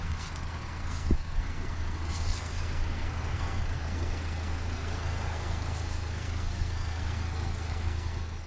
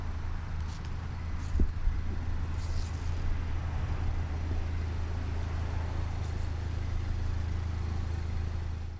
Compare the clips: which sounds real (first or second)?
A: second